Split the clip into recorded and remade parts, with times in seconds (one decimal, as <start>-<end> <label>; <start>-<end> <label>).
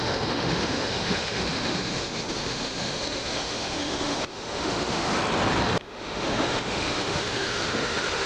0.0-5.1 remade; 5.1-5.8 recorded; 5.8-8.3 remade